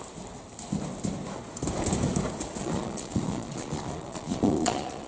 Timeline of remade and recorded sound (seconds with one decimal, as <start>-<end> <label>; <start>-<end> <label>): 0.0-2.6 recorded; 2.6-5.1 remade